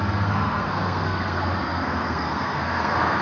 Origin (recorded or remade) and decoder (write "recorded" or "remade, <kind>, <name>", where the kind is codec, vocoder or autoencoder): remade, codec, SNAC